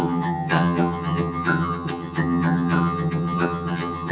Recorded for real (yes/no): no